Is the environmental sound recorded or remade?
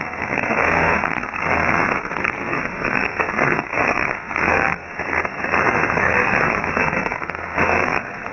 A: remade